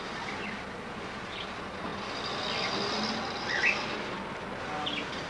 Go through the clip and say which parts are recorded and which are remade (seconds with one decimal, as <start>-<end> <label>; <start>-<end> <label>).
0.0-5.3 recorded